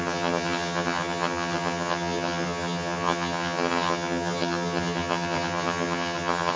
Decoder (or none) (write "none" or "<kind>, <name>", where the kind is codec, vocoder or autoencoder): vocoder, HiFi-GAN